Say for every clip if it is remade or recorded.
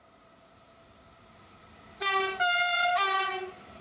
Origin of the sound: recorded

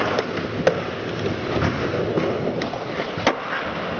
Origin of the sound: recorded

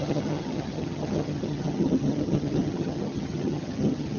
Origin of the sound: remade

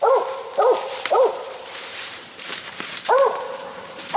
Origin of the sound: remade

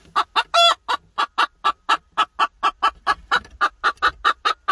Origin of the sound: recorded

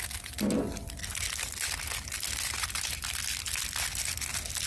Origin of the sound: recorded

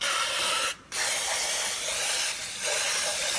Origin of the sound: recorded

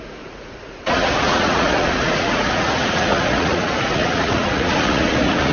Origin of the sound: remade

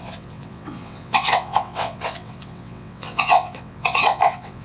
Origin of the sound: remade